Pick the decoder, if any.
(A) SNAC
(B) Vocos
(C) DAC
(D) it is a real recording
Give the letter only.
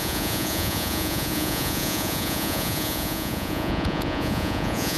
B